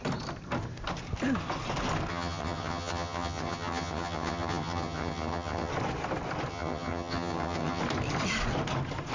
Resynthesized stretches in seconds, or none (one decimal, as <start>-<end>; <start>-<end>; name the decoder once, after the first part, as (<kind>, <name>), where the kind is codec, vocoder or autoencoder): 2.1-5.7 (vocoder, HiFi-GAN); 6.5-7.8